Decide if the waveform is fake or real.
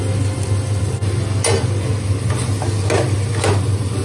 real